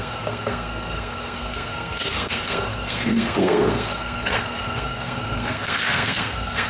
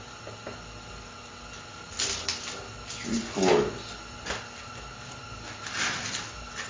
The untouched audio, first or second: second